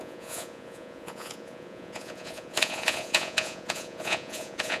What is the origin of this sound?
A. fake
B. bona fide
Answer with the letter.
A